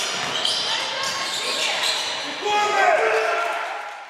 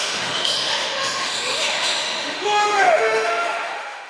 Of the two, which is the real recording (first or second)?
first